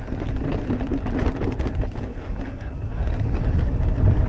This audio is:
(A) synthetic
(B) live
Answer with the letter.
B